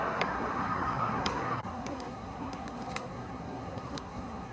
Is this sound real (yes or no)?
no